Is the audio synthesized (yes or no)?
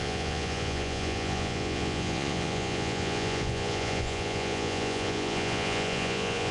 yes